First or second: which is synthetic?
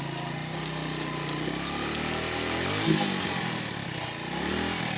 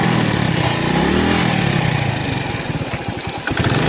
second